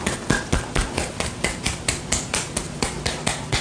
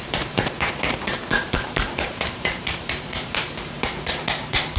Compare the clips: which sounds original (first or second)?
first